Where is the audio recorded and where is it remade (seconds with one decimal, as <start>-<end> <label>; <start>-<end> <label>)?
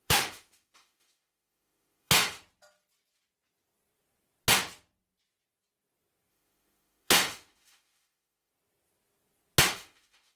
0.0-2.4 remade; 2.4-6.3 recorded; 6.3-8.5 remade; 8.5-9.6 recorded; 9.6-10.4 remade